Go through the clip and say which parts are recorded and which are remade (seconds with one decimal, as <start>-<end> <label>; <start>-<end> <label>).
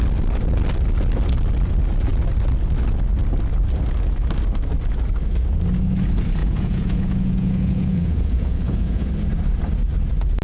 0.0-6.4 recorded; 6.4-9.1 remade; 9.1-10.4 recorded